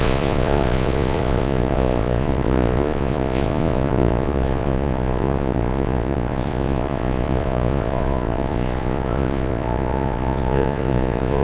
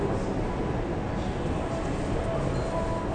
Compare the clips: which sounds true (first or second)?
second